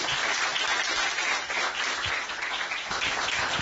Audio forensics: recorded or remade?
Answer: recorded